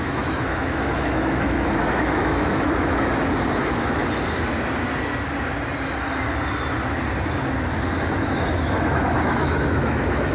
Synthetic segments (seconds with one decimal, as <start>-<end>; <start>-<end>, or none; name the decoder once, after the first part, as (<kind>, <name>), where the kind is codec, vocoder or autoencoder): 0.0-3.1 (autoencoder, DAC-VAE); 3.6-4.0; 8.1-10.3